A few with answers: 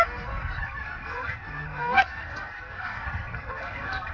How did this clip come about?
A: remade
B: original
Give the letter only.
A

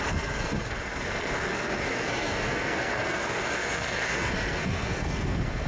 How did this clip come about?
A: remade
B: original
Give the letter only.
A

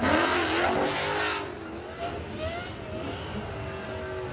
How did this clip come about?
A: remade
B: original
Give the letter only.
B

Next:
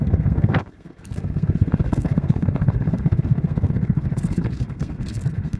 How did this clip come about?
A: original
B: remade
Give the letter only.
B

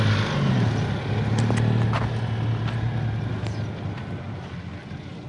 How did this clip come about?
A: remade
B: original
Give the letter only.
B